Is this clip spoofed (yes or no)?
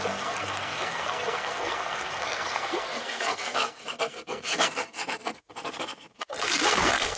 yes